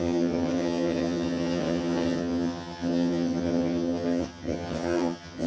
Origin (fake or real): fake